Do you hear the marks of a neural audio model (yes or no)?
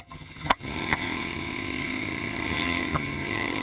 yes